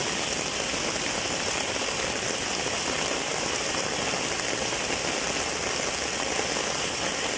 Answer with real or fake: real